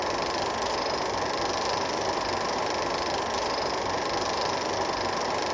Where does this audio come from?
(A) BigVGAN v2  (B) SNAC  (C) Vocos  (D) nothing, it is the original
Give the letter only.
D